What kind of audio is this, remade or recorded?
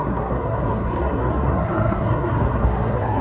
remade